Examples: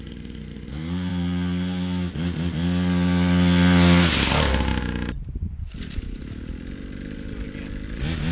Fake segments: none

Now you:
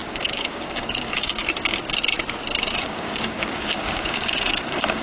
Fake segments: 0.0-1.4 (codec, DAC); 2.7-5.0

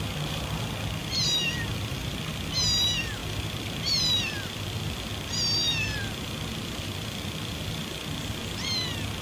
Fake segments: 1.0-2.3 (vocoder, BigVGAN v2); 3.2-5.1; 6.5-7.6

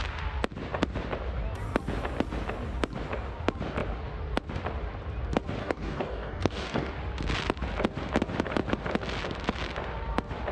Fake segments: 5.6-6.9 (codec, DAC)

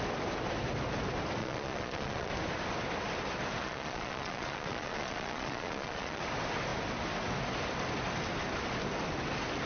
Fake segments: 1.4-2.3 (vocoder, Vocos); 3.6-6.2

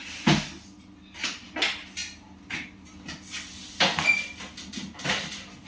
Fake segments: none

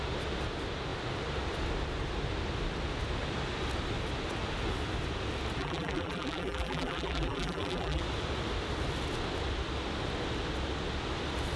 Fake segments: 5.6-8.0 (vocoder, BigVGAN v2)

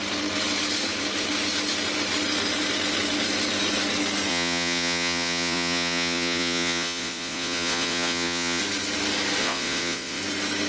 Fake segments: 4.3-8.6 (vocoder, Vocos); 9.4-10.2